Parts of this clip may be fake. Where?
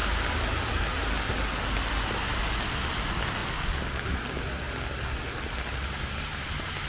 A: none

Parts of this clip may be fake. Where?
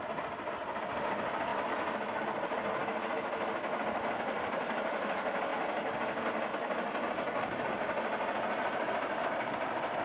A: 0.0-2.8 (vocoder, BigVGAN v2); 3.8-5.5; 6.0-6.5; 7.6-10.0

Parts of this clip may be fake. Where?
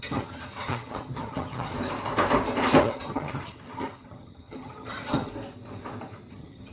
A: 0.0-1.7 (vocoder, HiFi-GAN); 2.8-5.3; 6.3-6.7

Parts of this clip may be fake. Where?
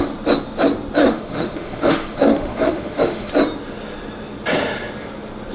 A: 1.0-3.3 (autoencoder, DAC-VAE)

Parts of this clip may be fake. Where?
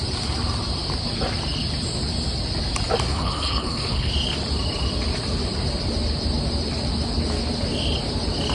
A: 3.1-4.1 (codec, HILCodec)